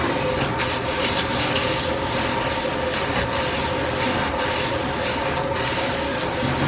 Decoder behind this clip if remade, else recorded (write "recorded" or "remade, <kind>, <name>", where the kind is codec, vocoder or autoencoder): recorded